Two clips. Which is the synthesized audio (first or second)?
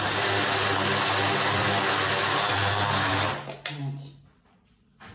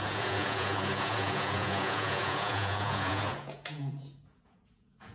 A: second